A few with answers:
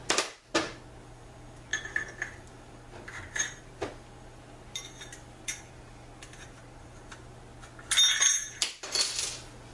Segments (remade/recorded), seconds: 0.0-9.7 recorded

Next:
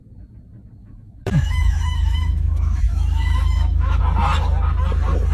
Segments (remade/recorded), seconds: 0.0-0.8 recorded; 0.8-4.0 remade; 4.0-5.3 recorded

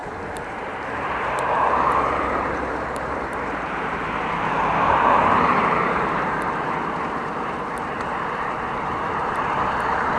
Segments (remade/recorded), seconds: 0.0-10.2 remade

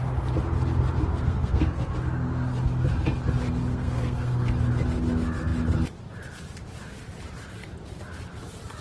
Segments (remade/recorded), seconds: 0.0-1.1 recorded; 1.1-1.9 remade; 1.9-3.7 recorded; 3.7-4.5 remade; 4.5-8.8 recorded